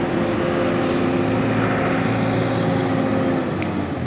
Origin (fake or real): real